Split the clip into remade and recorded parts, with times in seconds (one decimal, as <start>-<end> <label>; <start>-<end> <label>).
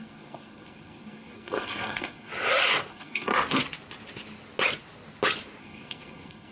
0.0-2.3 remade; 2.3-2.9 recorded; 2.9-3.3 remade; 3.3-5.6 recorded; 5.6-6.5 remade